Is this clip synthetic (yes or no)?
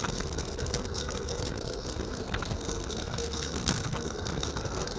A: yes